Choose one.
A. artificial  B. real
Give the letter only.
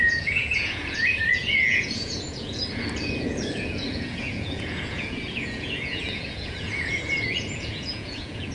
A